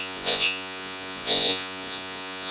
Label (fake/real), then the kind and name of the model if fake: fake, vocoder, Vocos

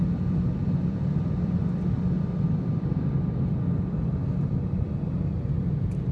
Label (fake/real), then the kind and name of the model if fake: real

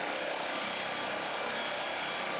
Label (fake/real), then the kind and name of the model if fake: real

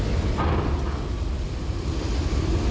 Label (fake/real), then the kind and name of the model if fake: real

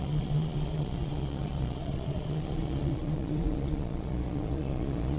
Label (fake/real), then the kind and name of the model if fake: fake, vocoder, Vocos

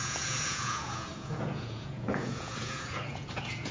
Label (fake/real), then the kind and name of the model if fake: fake, vocoder, Vocos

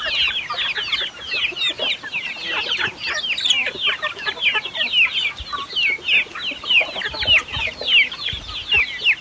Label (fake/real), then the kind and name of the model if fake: real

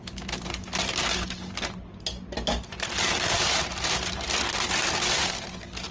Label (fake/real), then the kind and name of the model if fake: real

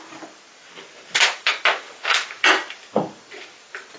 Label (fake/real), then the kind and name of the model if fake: real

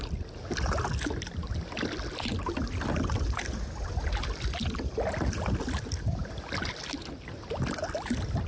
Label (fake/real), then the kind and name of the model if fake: real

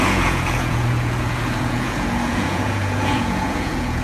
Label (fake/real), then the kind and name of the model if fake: fake, vocoder, Vocos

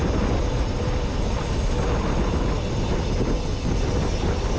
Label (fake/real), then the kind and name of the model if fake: real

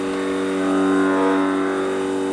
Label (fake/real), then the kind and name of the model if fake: real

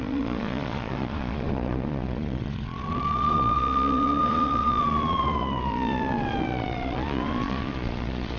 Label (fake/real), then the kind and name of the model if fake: fake, vocoder, Vocos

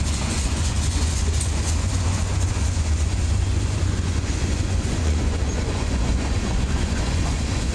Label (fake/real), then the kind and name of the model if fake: fake, vocoder, Vocos